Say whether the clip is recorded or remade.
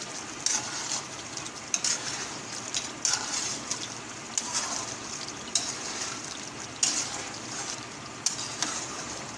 recorded